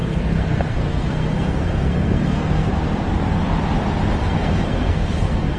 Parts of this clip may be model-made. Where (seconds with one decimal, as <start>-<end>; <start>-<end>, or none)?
0.0-2.7; 4.2-5.6